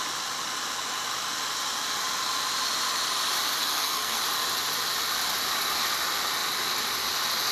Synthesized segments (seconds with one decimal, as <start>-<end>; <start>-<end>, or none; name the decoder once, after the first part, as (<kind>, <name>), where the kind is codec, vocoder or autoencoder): 3.6-4.2 (codec, SNAC)